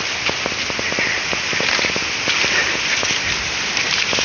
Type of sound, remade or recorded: recorded